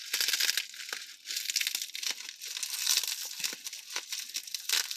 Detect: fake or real real